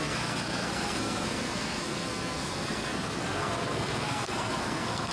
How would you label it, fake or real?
fake